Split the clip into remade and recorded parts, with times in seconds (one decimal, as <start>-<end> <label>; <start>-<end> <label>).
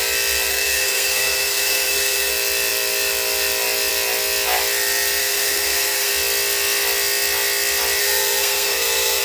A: 0.0-0.5 recorded; 0.5-2.3 remade; 2.3-5.2 recorded; 5.2-6.1 remade; 6.1-8.0 recorded; 8.0-9.2 remade